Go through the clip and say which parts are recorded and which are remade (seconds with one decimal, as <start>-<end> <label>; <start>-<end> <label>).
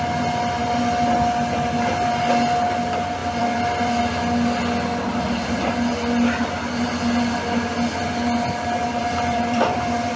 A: 0.0-3.2 recorded; 3.2-4.0 remade; 4.0-9.0 recorded; 9.0-10.2 remade